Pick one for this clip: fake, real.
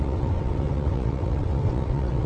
fake